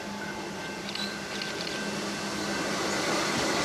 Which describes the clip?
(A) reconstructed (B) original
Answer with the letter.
B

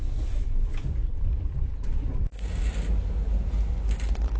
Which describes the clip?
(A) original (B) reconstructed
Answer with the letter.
A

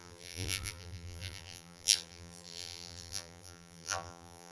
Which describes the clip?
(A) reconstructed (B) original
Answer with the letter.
A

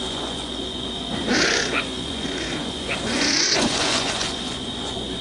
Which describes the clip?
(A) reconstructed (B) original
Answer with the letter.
A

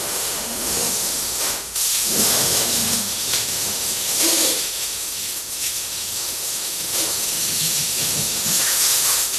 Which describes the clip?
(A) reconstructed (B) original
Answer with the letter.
A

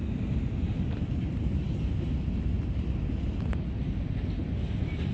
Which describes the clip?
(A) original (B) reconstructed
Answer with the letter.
A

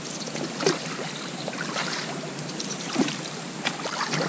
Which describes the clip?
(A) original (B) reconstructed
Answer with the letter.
A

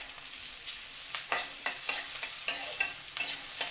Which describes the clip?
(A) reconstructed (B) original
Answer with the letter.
B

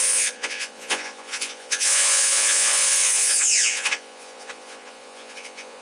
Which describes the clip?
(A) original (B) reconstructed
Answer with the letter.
B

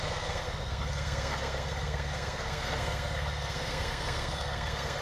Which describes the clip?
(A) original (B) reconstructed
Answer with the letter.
B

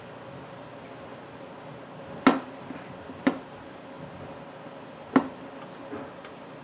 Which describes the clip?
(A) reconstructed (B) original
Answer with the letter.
B